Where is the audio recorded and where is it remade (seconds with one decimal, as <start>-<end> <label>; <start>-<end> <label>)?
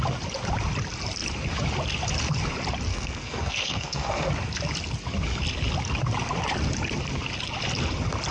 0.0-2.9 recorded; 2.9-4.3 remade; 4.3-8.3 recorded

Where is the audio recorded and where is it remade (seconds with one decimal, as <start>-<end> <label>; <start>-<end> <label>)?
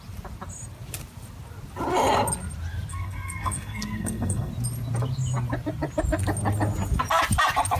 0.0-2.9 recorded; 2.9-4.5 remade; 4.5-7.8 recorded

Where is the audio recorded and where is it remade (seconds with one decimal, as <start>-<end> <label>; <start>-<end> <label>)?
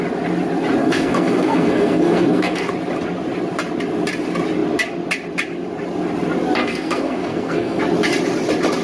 0.0-0.8 recorded; 0.8-2.7 remade; 2.7-6.6 recorded; 6.6-7.8 remade; 7.8-8.8 recorded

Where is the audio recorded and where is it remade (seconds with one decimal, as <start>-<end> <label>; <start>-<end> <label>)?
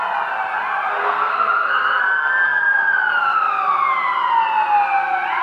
0.0-1.0 recorded; 1.0-2.0 remade; 2.0-5.4 recorded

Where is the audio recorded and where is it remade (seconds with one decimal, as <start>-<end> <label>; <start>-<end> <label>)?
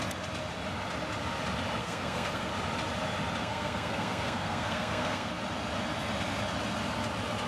0.0-1.8 recorded; 1.8-2.5 remade; 2.5-3.4 recorded; 3.4-5.3 remade; 5.3-7.5 recorded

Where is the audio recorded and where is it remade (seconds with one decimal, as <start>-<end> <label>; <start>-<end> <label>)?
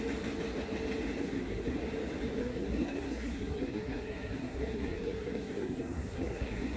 0.0-1.2 recorded; 1.2-1.8 remade; 1.8-2.4 recorded; 2.4-6.8 remade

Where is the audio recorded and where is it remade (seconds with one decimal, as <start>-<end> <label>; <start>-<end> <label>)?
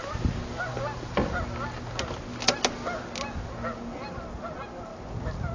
0.0-5.5 recorded